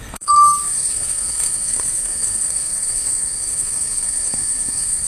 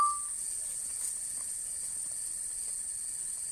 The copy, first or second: first